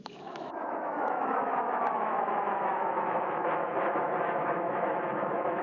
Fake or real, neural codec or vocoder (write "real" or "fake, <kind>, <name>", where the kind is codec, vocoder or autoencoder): fake, autoencoder, DAC-VAE